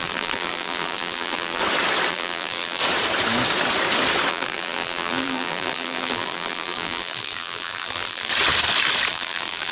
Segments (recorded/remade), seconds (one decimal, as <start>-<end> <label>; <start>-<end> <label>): 0.0-1.6 remade; 1.6-2.1 recorded; 2.1-2.8 remade; 2.8-4.3 recorded; 4.3-8.3 remade; 8.3-9.1 recorded; 9.1-9.7 remade